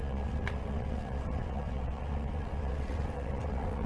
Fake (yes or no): yes